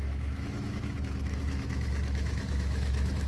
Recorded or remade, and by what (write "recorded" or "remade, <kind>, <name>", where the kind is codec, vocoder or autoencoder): remade, autoencoder, DAC-VAE